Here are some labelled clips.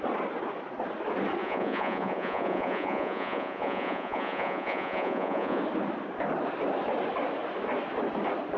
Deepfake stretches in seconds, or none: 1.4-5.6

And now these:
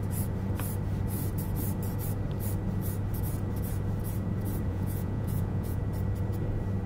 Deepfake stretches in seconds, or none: 4.7-5.8

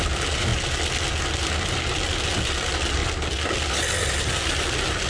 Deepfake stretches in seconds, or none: none

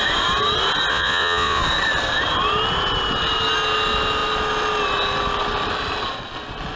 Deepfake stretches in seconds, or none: 0.9-1.6

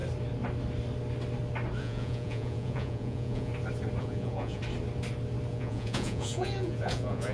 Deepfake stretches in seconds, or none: 1.8-3.5; 4.0-4.6; 5.5-7.3

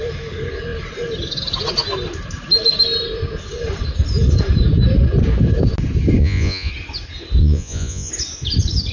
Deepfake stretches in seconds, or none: 6.2-6.7; 7.4-8.1